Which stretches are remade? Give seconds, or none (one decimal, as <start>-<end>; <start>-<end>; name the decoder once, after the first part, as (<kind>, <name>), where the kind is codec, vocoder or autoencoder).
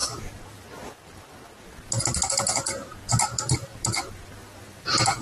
0.0-2.5 (vocoder, BigVGAN v2); 3.2-5.2